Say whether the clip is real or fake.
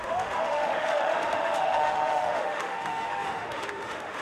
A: fake